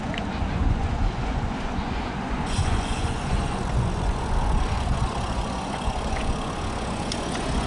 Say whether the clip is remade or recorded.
remade